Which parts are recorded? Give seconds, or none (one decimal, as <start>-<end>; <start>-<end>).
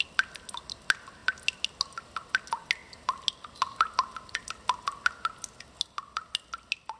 0.0-7.0